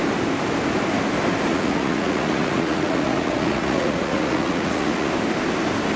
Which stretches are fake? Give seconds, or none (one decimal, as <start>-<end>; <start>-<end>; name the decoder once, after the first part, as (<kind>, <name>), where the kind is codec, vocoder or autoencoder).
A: 1.5-5.1 (vocoder, Vocos)